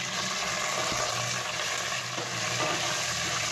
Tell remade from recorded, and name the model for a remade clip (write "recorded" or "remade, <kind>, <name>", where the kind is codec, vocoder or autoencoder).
recorded